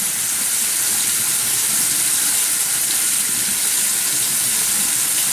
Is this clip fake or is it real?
real